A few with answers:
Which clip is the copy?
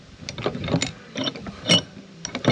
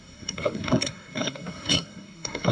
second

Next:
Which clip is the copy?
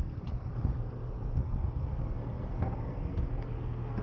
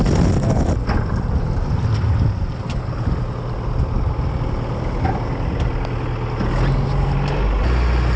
first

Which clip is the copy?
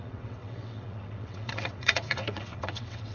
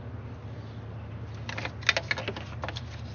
first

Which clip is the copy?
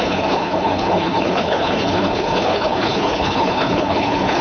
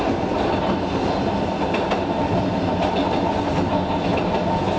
first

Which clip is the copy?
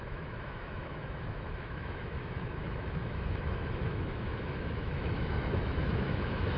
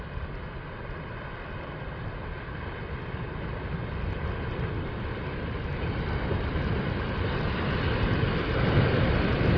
first